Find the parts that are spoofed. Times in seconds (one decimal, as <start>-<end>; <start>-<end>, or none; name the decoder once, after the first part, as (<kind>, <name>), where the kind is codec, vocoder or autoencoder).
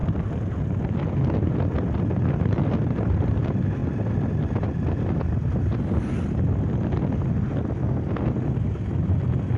none